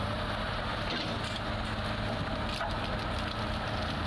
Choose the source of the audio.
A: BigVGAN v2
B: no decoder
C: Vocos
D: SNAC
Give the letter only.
B